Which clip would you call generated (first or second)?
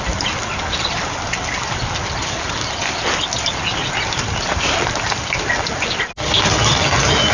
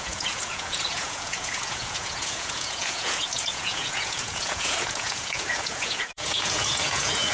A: second